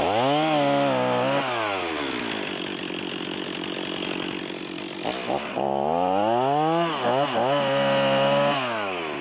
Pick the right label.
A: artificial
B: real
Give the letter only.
B